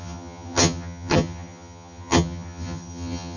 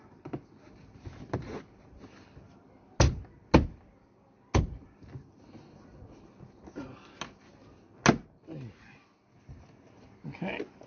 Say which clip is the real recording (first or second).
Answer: second